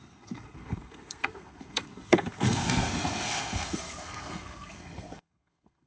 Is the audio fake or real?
fake